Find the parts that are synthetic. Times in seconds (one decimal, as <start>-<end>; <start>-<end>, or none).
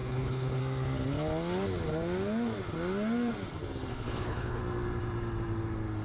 0.0-0.6; 3.9-4.6